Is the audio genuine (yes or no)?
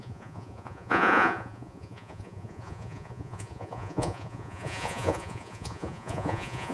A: no